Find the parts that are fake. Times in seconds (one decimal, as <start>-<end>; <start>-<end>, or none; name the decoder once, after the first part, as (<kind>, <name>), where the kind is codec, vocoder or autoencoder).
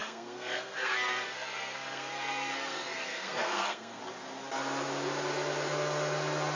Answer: 0.0-4.0 (codec, SNAC)